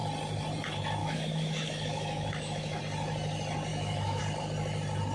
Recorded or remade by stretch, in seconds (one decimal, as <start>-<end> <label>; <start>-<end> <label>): 0.0-1.0 recorded; 1.0-2.8 remade; 2.8-3.7 recorded; 3.7-4.2 remade; 4.2-5.1 recorded

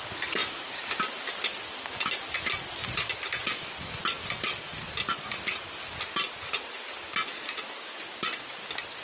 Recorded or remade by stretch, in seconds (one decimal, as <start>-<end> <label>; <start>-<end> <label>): 0.0-9.0 recorded